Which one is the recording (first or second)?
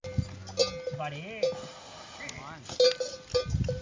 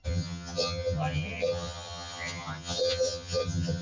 first